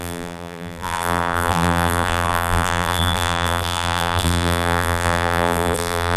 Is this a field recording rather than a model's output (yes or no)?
no